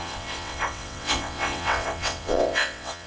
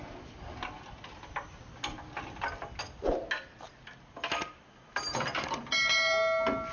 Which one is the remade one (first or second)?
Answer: first